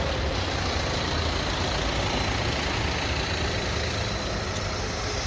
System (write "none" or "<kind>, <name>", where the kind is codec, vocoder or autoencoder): none